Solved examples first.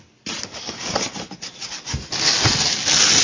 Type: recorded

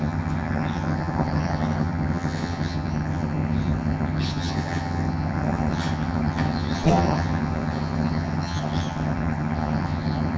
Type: remade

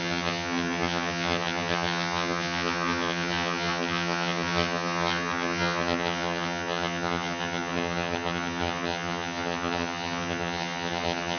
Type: remade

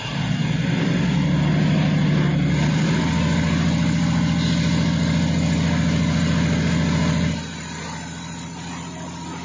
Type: recorded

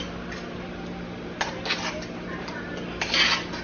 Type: recorded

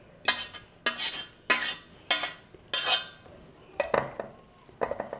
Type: recorded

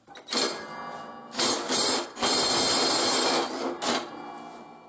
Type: recorded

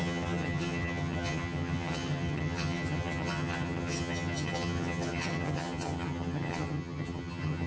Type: remade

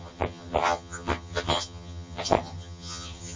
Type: remade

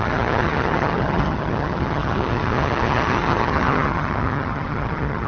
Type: remade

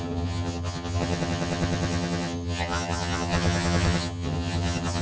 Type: remade